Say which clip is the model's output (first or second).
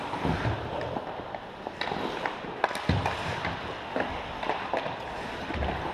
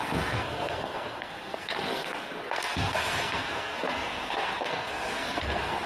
second